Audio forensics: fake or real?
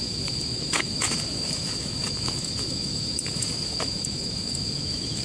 fake